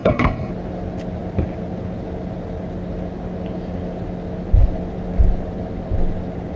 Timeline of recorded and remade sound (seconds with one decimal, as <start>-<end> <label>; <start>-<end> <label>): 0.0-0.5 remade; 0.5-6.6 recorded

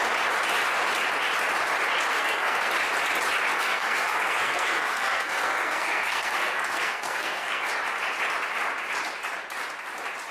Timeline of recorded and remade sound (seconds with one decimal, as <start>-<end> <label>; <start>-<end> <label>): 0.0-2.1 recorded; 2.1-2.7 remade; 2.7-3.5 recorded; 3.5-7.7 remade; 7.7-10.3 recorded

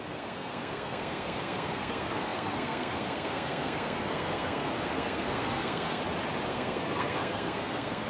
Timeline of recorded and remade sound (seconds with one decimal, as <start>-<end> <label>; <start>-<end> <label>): 0.0-6.0 remade; 6.0-6.5 recorded; 6.5-8.1 remade

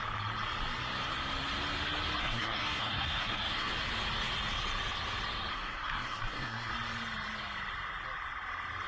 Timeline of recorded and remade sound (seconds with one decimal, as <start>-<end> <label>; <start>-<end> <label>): 0.0-2.2 recorded; 2.2-3.7 remade; 3.7-5.5 recorded; 5.5-6.7 remade; 6.7-8.9 recorded